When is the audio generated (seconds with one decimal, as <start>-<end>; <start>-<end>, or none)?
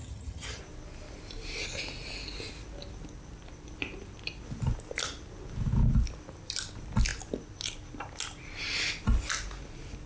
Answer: 0.0-0.6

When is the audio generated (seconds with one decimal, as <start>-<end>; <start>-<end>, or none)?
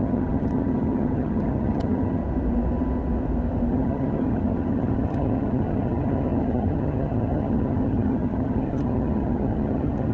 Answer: 0.0-2.2; 3.7-10.1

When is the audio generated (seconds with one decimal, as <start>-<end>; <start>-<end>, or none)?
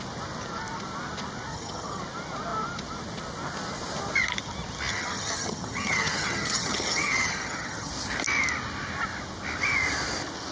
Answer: 1.5-2.0; 4.9-7.9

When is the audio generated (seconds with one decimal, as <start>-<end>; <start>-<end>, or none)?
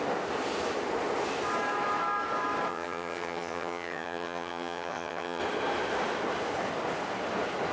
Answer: 2.7-5.4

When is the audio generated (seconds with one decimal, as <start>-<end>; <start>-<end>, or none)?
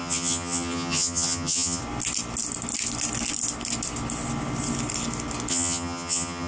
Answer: 0.0-1.8; 5.5-6.5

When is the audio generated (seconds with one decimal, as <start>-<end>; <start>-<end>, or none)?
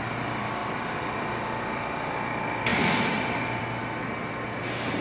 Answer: none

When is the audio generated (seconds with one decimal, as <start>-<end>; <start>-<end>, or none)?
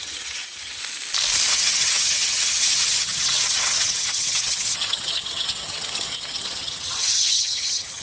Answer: 0.0-0.8; 1.5-8.0